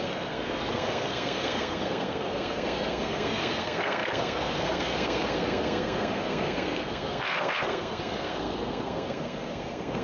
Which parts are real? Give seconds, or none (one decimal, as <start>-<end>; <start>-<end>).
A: none